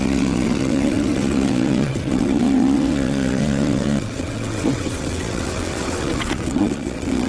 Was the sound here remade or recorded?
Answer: remade